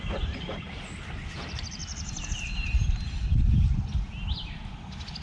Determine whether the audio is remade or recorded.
recorded